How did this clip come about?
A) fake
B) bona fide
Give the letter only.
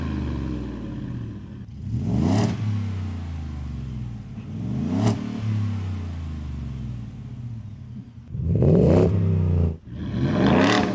B